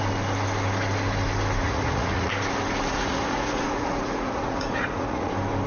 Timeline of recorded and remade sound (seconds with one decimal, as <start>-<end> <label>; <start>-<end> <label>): 0.0-1.6 recorded; 1.6-2.3 remade; 2.3-2.9 recorded; 2.9-5.3 remade; 5.3-5.7 recorded